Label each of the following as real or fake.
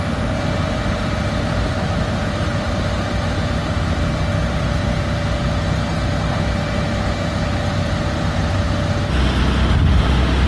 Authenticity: real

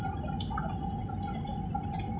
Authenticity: real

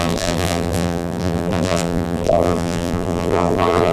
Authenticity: fake